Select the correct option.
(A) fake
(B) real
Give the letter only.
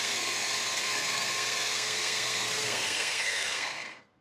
A